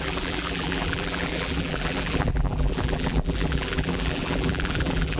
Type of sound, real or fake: fake